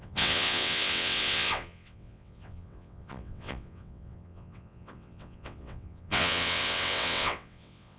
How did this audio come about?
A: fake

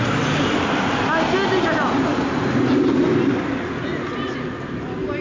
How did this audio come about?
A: real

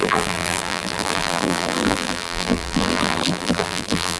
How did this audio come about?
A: fake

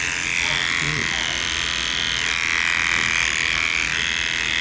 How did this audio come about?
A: real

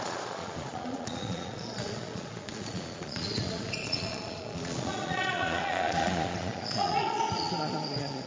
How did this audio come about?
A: fake